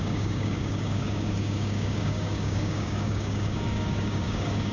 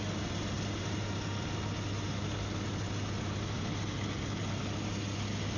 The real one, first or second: second